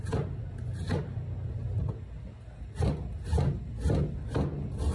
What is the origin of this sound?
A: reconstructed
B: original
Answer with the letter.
B